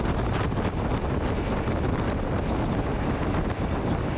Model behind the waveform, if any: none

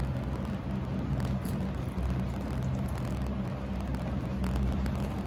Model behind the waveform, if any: none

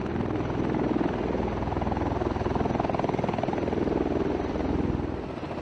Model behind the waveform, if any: vocoder, BigVGAN v2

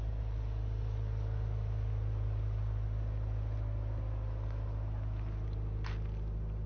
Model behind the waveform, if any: none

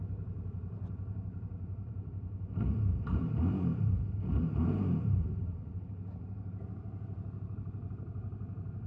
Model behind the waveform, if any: vocoder, BigVGAN v2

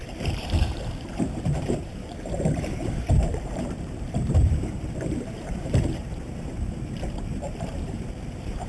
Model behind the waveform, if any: vocoder, BigVGAN v2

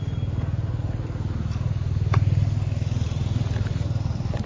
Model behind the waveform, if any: none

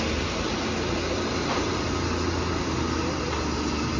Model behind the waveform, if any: none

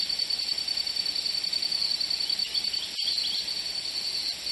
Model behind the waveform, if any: none